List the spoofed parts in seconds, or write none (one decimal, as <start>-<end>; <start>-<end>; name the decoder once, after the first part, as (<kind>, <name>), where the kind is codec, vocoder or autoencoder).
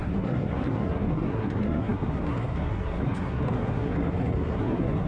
0.0-5.1 (codec, SNAC)